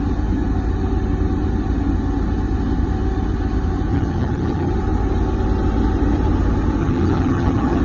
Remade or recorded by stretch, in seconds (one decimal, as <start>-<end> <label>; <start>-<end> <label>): 0.0-3.9 recorded; 3.9-4.7 remade; 4.7-6.8 recorded; 6.8-7.8 remade